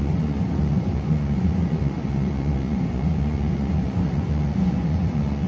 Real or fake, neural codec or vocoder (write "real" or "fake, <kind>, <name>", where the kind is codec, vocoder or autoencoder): fake, vocoder, Vocos